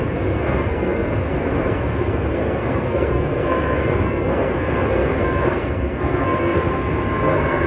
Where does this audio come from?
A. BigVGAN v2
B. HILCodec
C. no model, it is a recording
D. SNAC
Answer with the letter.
D